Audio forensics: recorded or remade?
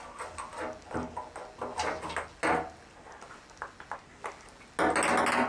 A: recorded